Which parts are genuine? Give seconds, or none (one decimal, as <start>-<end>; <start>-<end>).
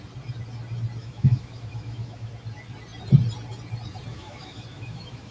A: 0.0-1.0; 2.3-4.1